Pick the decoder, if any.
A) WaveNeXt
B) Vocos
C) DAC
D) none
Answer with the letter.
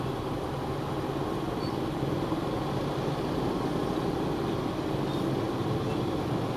D